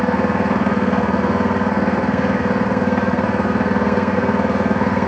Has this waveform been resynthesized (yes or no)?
yes